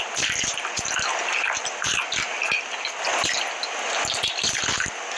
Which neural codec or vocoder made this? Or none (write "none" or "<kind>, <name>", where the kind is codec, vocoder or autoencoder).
none